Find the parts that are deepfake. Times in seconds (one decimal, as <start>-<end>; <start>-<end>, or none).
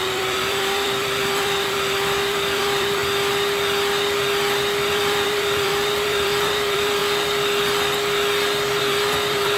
0.0-3.0; 4.9-7.0; 8.8-9.6